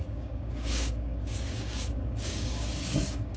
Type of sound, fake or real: fake